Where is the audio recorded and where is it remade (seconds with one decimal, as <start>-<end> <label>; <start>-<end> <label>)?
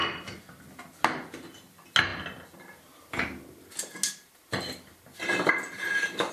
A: 0.0-6.3 recorded